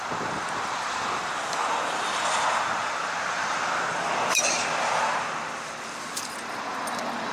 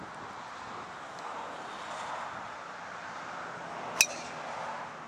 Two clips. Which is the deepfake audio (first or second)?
first